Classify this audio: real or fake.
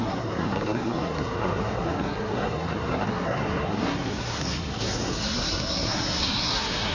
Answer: fake